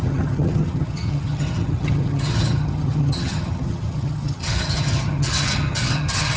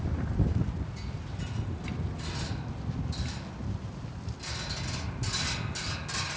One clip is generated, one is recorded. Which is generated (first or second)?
first